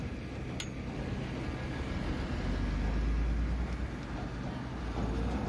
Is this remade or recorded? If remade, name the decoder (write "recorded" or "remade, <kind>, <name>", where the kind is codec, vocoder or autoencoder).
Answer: recorded